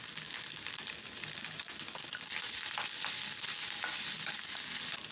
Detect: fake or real real